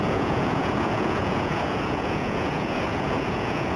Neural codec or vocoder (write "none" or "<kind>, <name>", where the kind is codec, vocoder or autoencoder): vocoder, Vocos